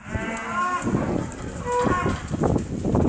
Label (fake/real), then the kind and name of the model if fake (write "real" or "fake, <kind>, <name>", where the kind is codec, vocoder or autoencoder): real